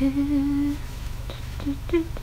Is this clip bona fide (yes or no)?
no